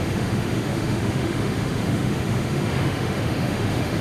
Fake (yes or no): yes